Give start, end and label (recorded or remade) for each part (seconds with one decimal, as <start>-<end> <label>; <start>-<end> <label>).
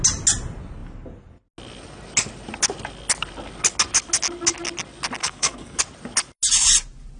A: 0.0-5.2 recorded; 5.2-5.8 remade; 5.8-7.2 recorded